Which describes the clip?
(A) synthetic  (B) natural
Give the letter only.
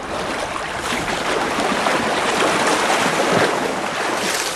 B